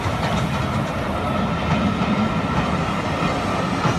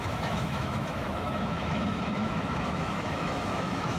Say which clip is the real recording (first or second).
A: first